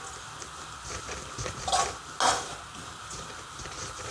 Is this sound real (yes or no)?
yes